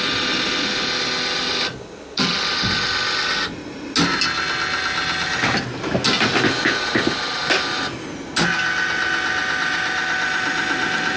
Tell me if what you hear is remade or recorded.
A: recorded